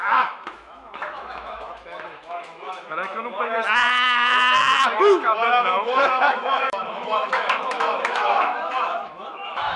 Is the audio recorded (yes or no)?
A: no